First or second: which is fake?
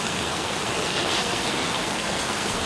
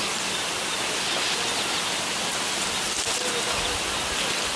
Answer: first